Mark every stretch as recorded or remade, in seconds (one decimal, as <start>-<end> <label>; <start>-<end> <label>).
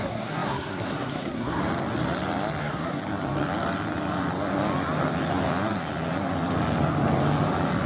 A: 0.0-1.6 remade; 1.6-2.6 recorded; 2.6-3.0 remade; 3.0-7.9 recorded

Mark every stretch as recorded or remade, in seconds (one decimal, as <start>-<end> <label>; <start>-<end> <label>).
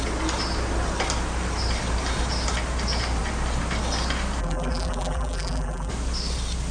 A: 0.0-4.4 recorded; 4.4-5.9 remade; 5.9-6.7 recorded